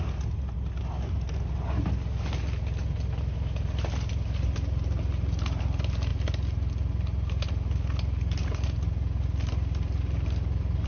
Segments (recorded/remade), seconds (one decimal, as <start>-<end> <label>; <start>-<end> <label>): 0.0-10.9 recorded